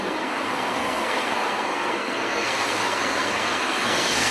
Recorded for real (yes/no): no